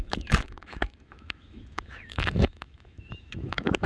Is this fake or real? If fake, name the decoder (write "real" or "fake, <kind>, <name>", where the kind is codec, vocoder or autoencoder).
fake, autoencoder, DAC-VAE